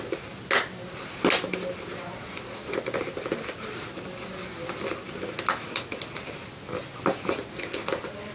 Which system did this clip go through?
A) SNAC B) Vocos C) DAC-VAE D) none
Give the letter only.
D